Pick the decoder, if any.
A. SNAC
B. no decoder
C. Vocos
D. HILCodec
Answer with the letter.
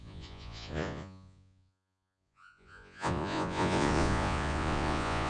C